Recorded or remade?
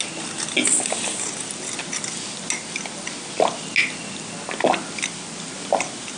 recorded